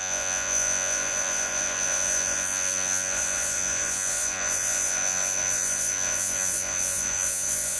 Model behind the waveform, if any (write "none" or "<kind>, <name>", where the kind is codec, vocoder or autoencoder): vocoder, Vocos